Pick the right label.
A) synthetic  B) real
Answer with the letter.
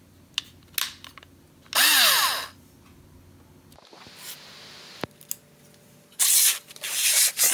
B